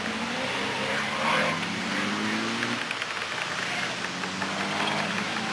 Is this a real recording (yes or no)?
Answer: yes